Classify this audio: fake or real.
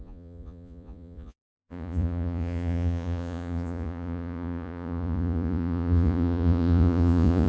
fake